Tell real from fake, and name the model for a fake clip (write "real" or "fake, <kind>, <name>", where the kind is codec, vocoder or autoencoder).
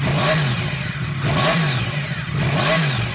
real